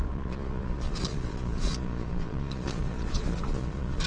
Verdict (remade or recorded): remade